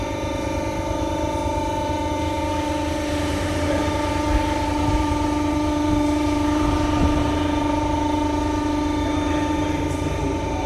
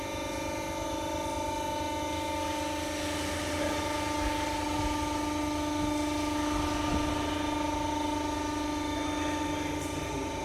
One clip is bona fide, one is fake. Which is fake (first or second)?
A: first